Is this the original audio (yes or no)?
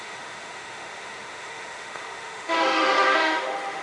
no